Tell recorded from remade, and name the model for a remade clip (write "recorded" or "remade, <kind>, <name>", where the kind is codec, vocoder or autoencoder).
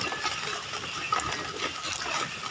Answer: recorded